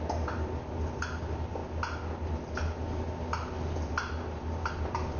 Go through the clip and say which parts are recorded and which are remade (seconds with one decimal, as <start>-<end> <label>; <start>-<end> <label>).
0.0-1.6 remade; 1.6-4.7 recorded; 4.7-5.2 remade